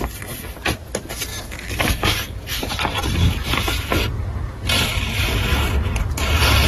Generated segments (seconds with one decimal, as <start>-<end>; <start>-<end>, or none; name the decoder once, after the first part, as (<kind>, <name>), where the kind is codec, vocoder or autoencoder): 1.3-2.6 (codec, DAC)